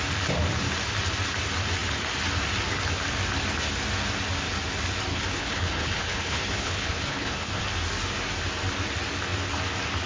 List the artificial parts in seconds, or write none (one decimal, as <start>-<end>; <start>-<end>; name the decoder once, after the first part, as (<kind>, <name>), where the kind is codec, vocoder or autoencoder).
5.1-7.6 (codec, HILCodec)